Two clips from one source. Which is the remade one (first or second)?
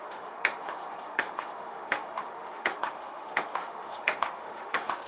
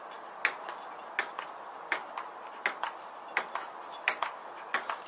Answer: first